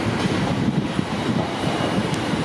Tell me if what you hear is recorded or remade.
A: remade